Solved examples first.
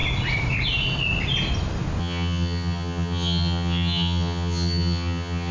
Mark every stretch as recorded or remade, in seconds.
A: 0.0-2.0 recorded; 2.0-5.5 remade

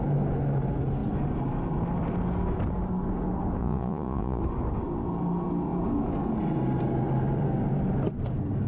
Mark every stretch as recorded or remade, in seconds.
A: 0.0-3.6 recorded; 3.6-4.4 remade; 4.4-8.7 recorded

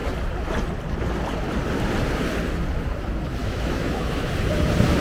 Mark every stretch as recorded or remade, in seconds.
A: 0.0-3.4 recorded; 3.4-4.3 remade; 4.3-5.0 recorded

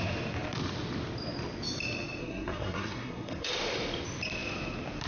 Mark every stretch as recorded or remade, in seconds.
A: 0.0-2.2 recorded; 2.2-3.5 remade; 3.5-5.1 recorded